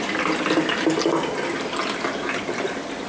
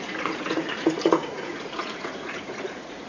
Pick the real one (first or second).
first